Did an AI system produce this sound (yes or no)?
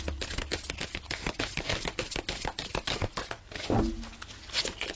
no